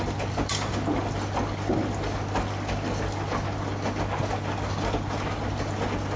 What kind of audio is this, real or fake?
real